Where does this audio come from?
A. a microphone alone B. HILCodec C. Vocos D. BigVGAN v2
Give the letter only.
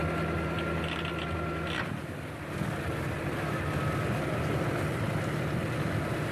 A